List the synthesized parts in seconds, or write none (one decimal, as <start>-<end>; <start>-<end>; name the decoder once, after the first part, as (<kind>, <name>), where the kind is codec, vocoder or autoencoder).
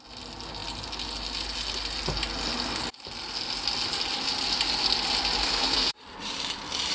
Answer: 5.4-6.0 (codec, SNAC)